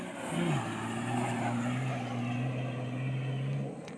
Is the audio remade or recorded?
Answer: recorded